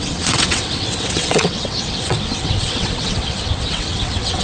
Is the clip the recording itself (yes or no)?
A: no